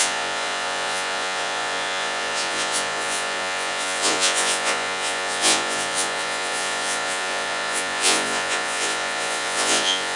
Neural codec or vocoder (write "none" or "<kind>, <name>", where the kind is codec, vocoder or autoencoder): vocoder, Vocos